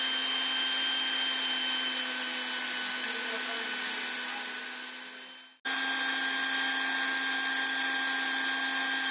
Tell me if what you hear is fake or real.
real